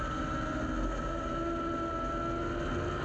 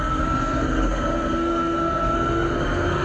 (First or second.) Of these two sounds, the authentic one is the first